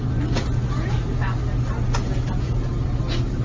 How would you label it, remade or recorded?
recorded